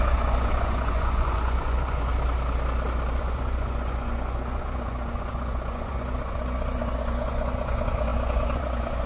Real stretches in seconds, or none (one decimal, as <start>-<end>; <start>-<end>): 2.1-3.2